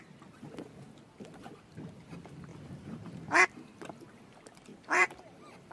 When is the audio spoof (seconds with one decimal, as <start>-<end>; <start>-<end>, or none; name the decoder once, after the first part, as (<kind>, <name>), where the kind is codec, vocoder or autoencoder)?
2.5-3.4 (vocoder, BigVGAN v2); 4.7-5.7

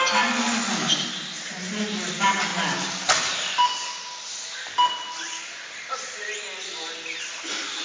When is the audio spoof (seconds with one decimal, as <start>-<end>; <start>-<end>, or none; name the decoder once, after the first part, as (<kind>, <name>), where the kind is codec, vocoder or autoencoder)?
none

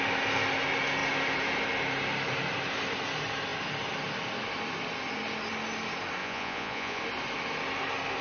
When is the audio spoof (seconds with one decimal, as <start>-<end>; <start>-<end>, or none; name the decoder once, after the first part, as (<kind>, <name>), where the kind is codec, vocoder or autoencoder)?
6.2-7.0 (vocoder, Vocos)